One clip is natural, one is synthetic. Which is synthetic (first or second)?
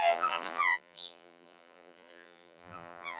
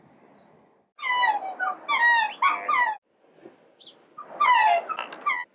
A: first